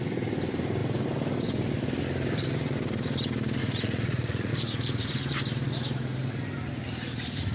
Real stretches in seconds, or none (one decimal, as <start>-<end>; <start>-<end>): 0.0-3.6; 4.5-7.5